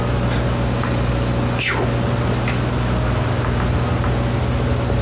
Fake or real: real